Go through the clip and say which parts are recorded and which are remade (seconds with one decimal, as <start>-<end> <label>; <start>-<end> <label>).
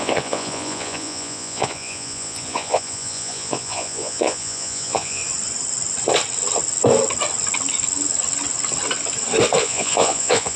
0.0-5.2 remade; 5.2-9.6 recorded; 9.6-10.6 remade